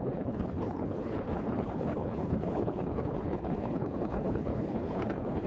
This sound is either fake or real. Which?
fake